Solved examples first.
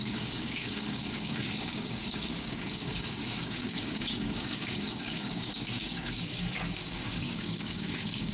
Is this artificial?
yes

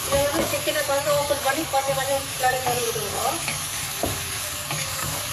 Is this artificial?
yes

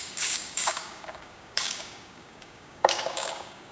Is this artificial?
yes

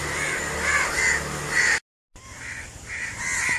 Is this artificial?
no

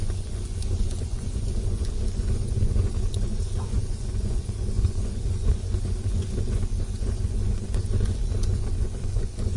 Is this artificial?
yes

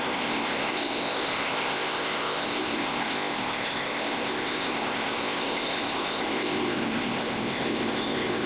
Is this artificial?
yes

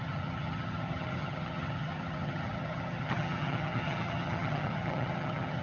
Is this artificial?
yes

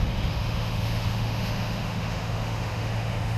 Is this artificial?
yes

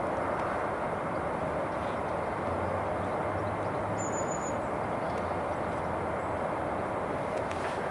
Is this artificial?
no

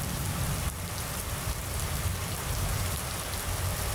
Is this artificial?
no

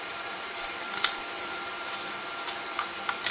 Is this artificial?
yes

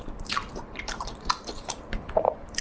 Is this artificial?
yes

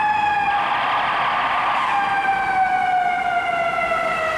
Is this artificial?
no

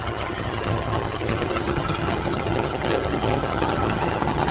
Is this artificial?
yes